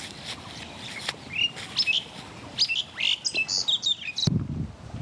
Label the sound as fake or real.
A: real